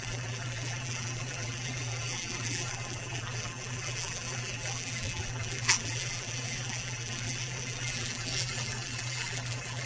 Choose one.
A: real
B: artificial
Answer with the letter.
B